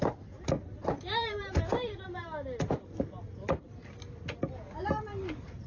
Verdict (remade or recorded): remade